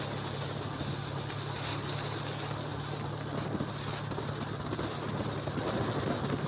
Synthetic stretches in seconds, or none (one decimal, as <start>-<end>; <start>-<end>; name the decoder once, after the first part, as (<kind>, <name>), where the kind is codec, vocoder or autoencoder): none